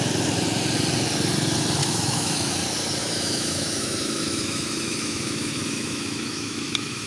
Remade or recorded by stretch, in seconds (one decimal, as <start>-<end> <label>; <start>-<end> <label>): 0.0-1.8 recorded; 1.8-2.5 remade; 2.5-3.0 recorded; 3.0-7.1 remade